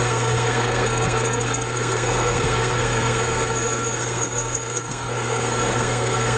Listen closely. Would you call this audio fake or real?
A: fake